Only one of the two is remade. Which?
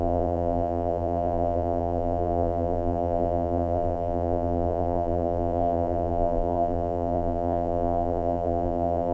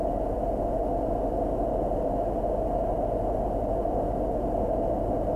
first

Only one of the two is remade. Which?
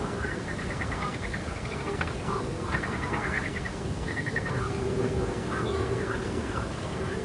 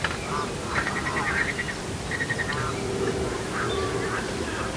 first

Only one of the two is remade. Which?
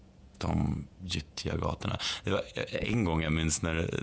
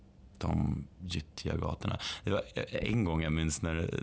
first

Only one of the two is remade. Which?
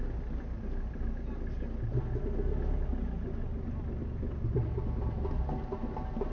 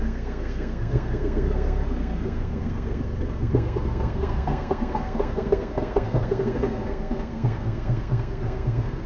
second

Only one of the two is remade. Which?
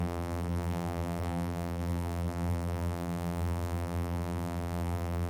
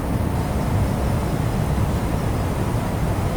first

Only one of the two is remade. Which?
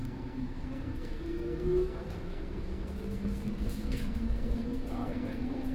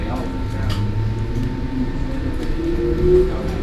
first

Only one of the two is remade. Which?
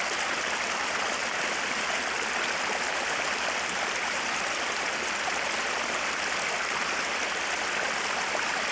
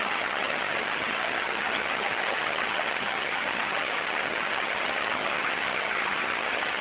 second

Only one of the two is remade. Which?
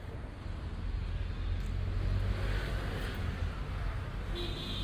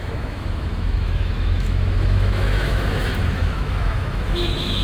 second